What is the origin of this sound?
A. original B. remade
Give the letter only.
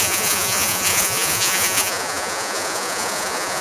B